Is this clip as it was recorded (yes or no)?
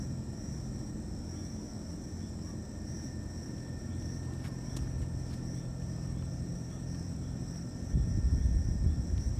no